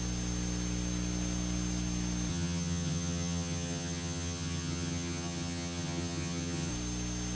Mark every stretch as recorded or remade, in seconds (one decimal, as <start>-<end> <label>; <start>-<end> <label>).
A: 0.0-2.3 recorded; 2.3-6.7 remade; 6.7-7.3 recorded